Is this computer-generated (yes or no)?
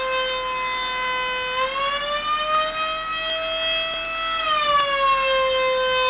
no